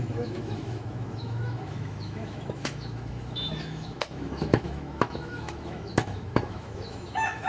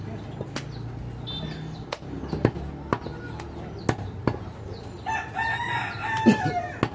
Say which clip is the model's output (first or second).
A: first